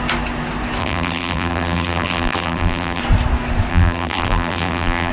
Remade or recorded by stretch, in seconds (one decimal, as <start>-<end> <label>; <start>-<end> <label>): 0.0-0.8 recorded; 0.8-3.0 remade; 3.0-3.7 recorded; 3.7-5.1 remade

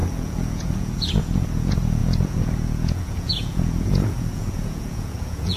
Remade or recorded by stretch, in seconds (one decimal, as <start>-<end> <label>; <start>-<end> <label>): 0.0-5.6 remade

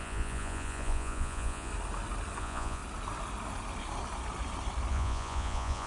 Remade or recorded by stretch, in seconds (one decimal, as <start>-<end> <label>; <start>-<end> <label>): 0.0-1.7 remade; 1.7-2.4 recorded; 2.4-2.8 remade; 2.8-4.9 recorded; 4.9-5.9 remade

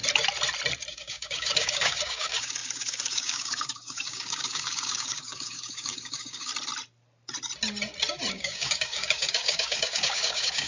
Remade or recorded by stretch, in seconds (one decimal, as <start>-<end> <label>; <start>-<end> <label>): 0.0-0.9 recorded; 0.9-6.5 remade; 6.5-8.3 recorded; 8.3-10.7 remade

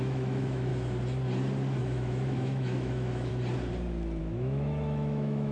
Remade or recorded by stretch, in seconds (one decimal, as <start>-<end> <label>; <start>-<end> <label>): 0.0-0.7 remade; 0.7-1.8 recorded; 1.8-3.3 remade; 3.3-4.2 recorded; 4.2-5.5 remade

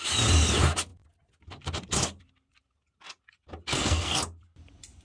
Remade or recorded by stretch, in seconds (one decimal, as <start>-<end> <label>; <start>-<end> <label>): 0.0-3.7 recorded; 3.7-4.2 remade; 4.2-5.0 recorded

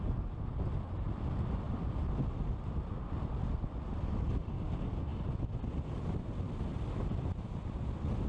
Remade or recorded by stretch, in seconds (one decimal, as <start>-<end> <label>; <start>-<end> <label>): 0.0-8.3 recorded